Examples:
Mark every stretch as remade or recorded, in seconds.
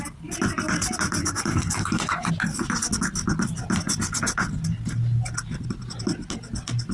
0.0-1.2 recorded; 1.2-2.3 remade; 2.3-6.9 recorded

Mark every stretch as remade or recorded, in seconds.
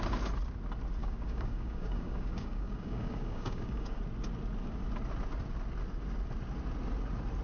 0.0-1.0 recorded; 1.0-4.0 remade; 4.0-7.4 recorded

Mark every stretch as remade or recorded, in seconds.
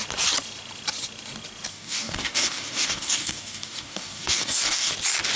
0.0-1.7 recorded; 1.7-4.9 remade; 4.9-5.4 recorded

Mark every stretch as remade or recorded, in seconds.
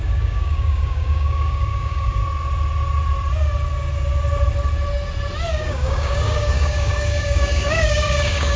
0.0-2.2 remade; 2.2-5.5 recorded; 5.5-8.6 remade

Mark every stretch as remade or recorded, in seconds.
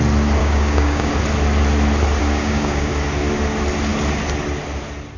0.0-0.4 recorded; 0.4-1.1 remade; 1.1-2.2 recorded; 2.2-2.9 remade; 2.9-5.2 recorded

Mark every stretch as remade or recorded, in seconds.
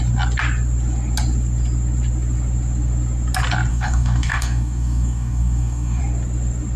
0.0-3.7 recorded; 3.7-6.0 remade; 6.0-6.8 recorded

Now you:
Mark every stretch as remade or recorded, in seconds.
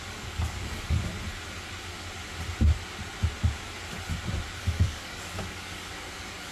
0.0-1.1 remade; 1.1-4.6 recorded; 4.6-6.5 remade